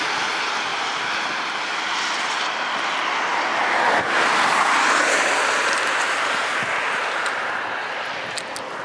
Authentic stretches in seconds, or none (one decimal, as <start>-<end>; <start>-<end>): 0.0-0.7; 2.4-8.8